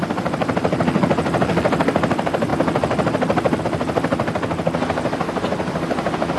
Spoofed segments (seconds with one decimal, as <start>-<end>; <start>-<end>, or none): none